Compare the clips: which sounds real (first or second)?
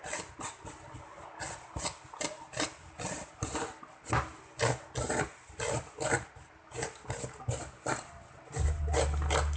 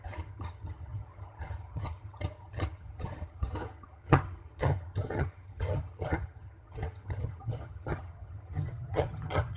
first